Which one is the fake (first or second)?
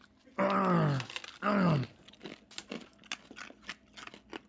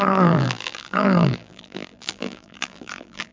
second